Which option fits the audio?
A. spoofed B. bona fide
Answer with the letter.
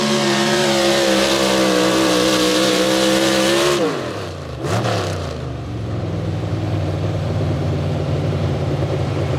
A